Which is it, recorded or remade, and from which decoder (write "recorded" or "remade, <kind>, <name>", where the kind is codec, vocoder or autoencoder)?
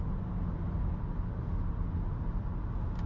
recorded